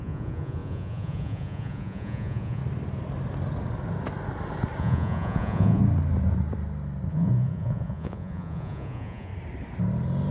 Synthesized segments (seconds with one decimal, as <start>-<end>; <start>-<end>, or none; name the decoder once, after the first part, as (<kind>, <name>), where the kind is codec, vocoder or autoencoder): 0.0-2.6 (vocoder, Vocos); 4.8-5.8; 7.1-9.3